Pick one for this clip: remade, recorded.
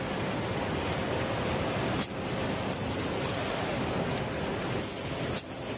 recorded